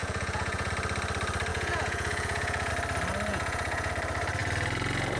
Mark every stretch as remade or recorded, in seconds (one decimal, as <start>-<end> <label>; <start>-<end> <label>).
0.0-0.7 remade; 0.7-1.5 recorded; 1.5-2.7 remade; 2.7-3.3 recorded; 3.3-3.9 remade; 3.9-5.2 recorded